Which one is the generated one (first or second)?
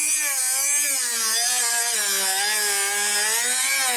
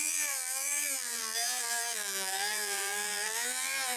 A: second